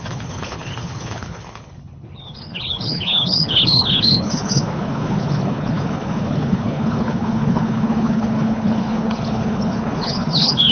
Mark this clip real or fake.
fake